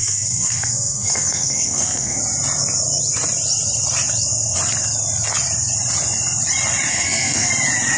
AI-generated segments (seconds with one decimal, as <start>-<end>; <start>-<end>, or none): 0.0-2.2; 6.9-7.5